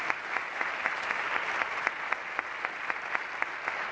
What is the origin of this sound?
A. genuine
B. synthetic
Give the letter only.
A